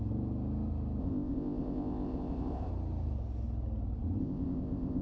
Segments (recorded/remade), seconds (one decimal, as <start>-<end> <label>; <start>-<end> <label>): 0.0-1.0 recorded; 1.0-2.7 remade; 2.7-4.2 recorded; 4.2-5.0 remade